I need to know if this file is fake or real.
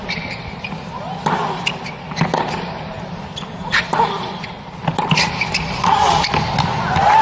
real